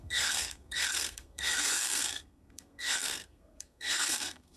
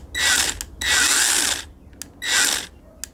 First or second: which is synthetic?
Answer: first